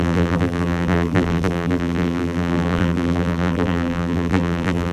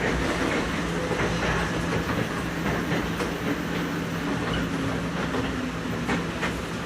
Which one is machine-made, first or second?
first